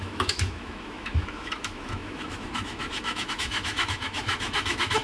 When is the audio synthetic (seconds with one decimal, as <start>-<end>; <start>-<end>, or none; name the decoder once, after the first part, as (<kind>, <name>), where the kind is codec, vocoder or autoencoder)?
0.0-5.0 (autoencoder, DAC-VAE)